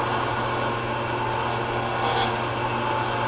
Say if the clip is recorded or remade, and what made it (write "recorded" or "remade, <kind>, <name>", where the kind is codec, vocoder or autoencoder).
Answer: recorded